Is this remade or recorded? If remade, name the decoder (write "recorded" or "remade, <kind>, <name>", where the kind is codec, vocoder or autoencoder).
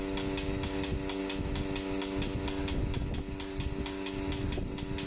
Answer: recorded